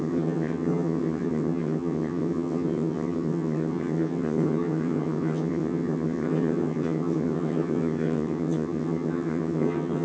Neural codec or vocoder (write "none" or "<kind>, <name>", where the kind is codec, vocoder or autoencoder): vocoder, HiFi-GAN